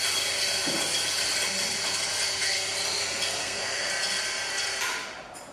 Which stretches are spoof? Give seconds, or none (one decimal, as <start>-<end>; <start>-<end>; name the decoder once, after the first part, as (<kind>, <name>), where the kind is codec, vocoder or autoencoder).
3.4-3.9 (codec, SNAC)